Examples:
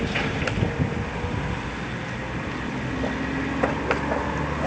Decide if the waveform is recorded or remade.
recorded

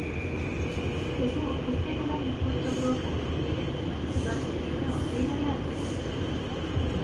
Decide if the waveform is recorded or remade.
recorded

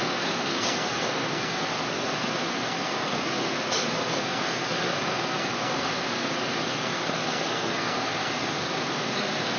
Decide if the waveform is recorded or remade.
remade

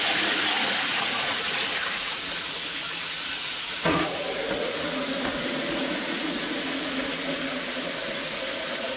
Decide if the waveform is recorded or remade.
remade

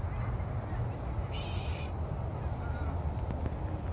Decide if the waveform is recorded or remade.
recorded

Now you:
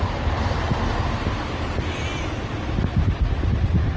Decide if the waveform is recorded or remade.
recorded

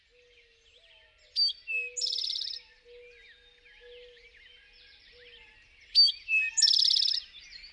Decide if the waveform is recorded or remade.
recorded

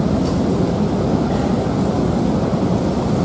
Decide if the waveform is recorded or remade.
recorded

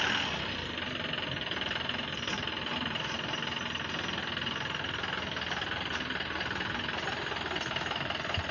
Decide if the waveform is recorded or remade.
recorded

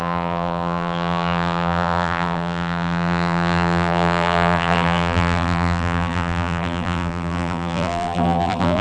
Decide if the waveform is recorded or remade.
remade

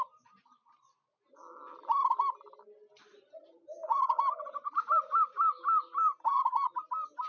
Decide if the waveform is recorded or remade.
recorded